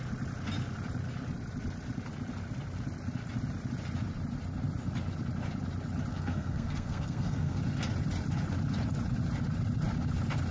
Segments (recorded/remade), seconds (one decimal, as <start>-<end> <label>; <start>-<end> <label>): 0.0-6.1 recorded; 6.1-7.6 remade; 7.6-10.5 recorded